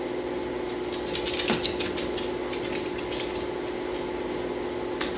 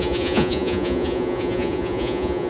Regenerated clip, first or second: second